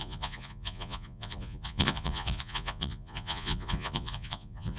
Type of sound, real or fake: fake